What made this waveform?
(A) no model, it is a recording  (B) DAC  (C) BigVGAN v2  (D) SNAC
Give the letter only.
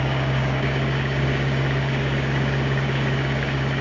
B